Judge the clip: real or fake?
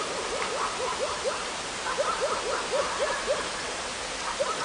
real